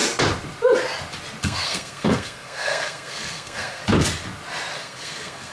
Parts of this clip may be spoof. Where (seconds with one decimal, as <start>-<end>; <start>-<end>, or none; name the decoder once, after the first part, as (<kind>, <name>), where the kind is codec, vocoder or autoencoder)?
1.4-3.8 (codec, SNAC); 4.7-5.5